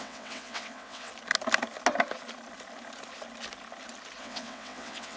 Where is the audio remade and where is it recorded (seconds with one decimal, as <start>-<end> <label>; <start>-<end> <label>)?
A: 0.0-1.1 remade; 1.1-4.2 recorded; 4.2-5.2 remade